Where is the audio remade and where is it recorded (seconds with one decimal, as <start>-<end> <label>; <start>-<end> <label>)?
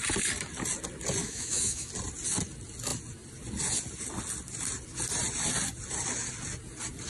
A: 0.0-1.2 recorded; 1.2-1.9 remade; 1.9-7.1 recorded